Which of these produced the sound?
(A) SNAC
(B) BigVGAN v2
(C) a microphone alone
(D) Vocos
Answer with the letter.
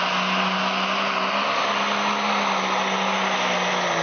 C